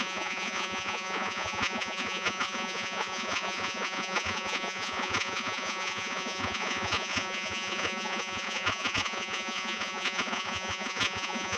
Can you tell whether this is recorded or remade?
remade